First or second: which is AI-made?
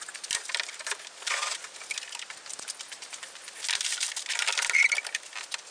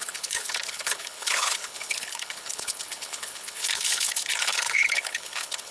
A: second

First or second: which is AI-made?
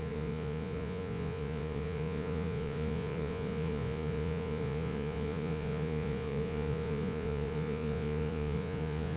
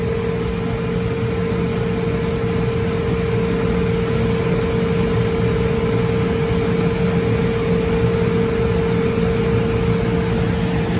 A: first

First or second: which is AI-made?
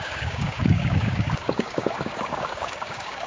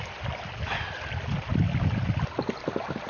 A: first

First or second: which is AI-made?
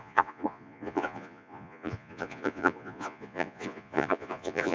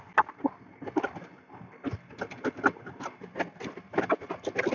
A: first